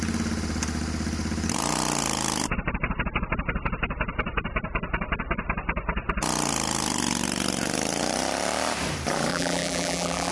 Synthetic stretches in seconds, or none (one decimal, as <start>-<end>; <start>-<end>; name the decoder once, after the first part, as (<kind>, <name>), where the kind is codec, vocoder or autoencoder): 9.3-10.3 (vocoder, BigVGAN v2)